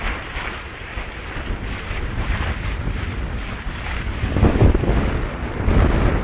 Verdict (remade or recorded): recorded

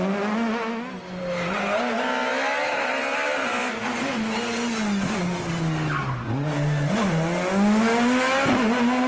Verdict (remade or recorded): recorded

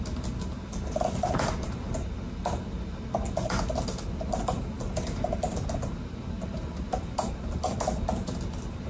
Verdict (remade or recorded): recorded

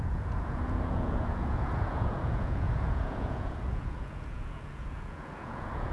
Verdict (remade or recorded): remade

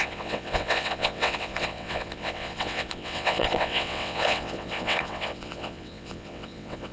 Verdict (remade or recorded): remade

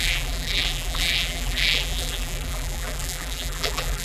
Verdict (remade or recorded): remade